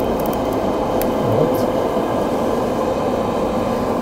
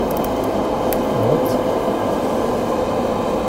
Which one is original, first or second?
second